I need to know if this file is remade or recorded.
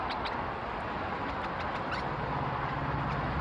recorded